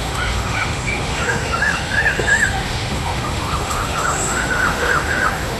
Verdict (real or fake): fake